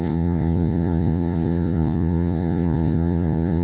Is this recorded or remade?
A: remade